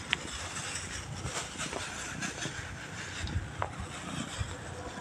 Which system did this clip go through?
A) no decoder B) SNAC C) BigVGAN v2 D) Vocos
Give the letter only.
A